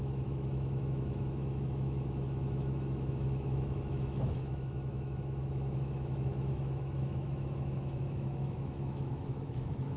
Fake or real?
fake